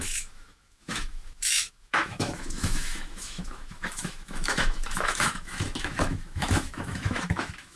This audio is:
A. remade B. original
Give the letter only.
A